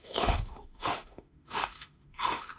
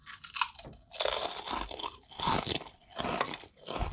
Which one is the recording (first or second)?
second